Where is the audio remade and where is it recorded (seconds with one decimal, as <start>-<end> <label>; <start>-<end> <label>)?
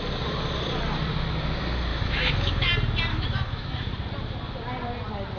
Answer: 0.0-1.9 recorded; 1.9-2.7 remade; 2.7-3.1 recorded; 3.1-3.7 remade; 3.7-5.4 recorded